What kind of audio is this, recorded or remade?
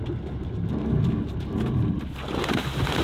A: recorded